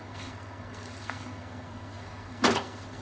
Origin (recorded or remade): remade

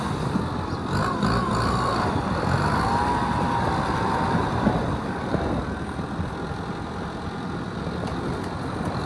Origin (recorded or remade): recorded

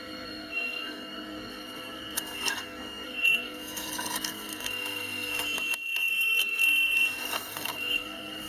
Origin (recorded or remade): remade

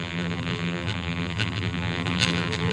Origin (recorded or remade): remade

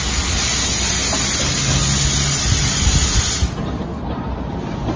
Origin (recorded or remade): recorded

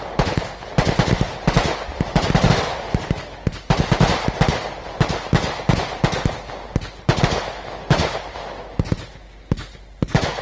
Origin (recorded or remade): recorded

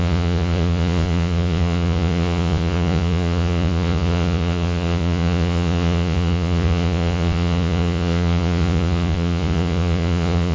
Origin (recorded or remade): remade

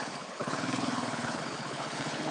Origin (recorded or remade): remade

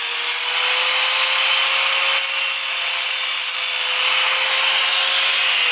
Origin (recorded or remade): recorded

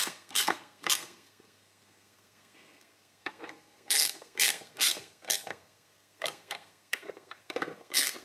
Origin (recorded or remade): remade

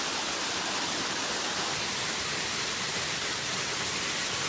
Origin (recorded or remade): recorded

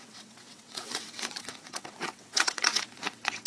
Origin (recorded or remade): remade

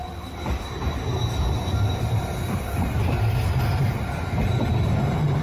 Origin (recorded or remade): remade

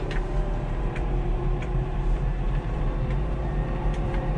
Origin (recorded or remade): remade